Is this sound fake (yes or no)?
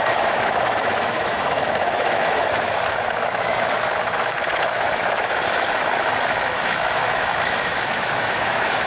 yes